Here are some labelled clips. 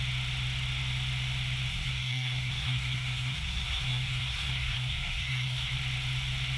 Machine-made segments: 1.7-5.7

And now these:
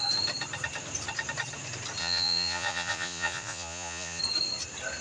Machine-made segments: 2.0-4.2